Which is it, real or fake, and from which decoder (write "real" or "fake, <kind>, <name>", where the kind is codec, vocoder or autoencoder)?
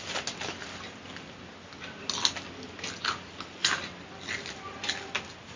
real